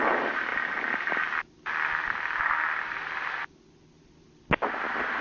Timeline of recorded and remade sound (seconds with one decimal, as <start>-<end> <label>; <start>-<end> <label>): 0.0-5.2 recorded